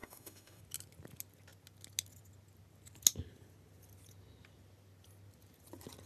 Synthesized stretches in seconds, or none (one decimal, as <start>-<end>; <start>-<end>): 0.0-0.6